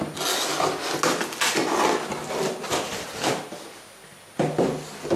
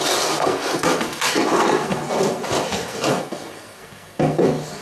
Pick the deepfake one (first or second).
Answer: second